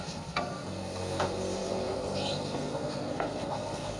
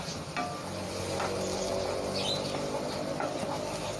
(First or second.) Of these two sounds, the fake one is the first